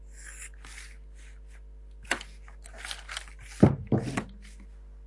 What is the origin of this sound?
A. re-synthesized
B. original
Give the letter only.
B